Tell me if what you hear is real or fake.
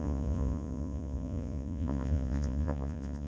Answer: fake